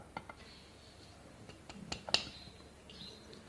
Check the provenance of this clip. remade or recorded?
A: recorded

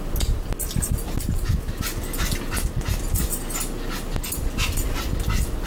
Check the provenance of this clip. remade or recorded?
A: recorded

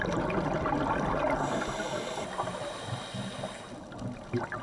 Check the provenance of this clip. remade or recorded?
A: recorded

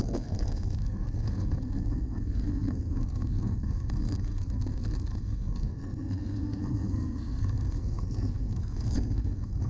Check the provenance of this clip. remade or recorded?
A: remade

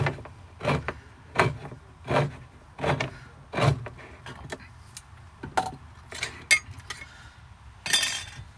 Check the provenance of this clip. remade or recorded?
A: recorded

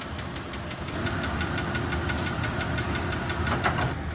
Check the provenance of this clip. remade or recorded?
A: recorded